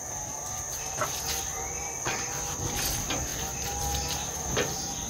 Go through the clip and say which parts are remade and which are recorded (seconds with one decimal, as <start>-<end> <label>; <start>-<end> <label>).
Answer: 0.0-5.1 remade